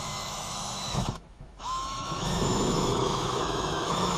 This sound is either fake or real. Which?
fake